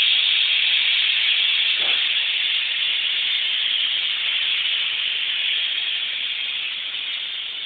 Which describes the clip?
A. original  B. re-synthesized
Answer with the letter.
A